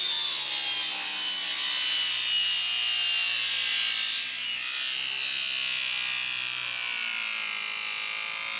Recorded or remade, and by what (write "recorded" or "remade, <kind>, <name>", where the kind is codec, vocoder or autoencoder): recorded